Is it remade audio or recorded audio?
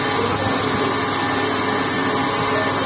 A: recorded